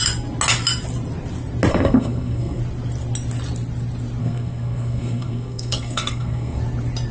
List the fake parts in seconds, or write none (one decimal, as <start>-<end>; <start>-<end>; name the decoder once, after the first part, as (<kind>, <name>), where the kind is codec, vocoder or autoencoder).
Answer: 1.7-2.6 (codec, SNAC); 4.2-6.6